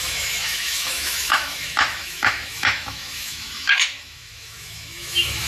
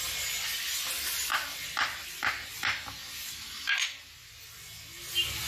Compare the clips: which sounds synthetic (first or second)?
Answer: first